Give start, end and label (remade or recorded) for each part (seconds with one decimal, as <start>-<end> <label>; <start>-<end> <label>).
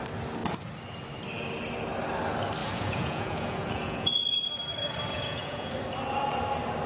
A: 0.0-2.6 recorded; 2.6-4.5 remade; 4.5-5.1 recorded; 5.1-5.7 remade; 5.7-6.9 recorded